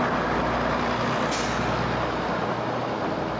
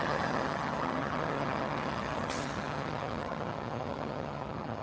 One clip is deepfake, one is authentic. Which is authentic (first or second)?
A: first